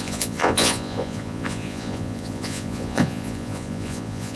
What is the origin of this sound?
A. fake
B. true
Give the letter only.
A